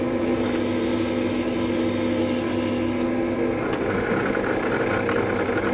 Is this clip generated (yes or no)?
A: no